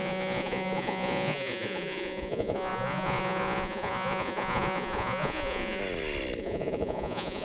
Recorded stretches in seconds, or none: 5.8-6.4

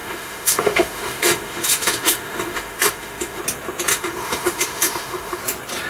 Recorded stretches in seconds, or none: 3.4-3.9; 5.4-5.9

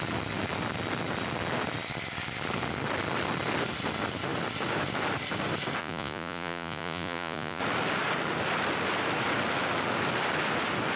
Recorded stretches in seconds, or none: 0.0-5.8; 7.6-11.0

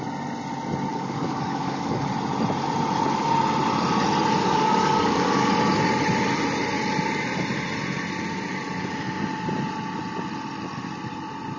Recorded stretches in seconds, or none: 0.0-0.9; 2.1-4.4; 5.5-11.6

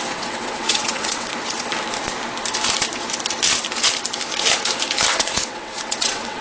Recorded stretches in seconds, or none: 1.3-5.1

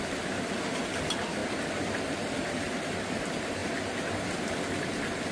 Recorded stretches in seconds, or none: 0.0-1.4; 2.3-3.6; 4.2-5.3

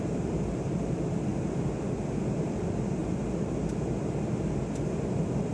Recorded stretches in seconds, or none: 0.0-5.5